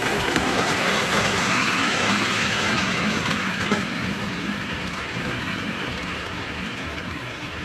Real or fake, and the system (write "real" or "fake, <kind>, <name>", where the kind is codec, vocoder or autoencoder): fake, codec, SNAC